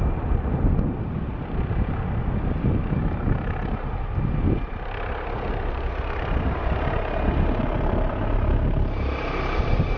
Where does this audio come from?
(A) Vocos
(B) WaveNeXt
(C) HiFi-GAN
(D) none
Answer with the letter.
D